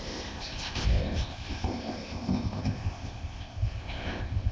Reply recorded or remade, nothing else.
remade